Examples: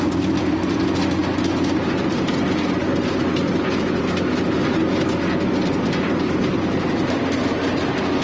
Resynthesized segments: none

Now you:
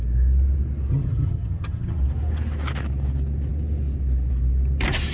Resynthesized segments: 0.9-2.0 (vocoder, HiFi-GAN)